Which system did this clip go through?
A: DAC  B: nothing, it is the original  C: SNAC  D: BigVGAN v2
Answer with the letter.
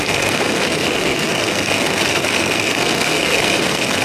C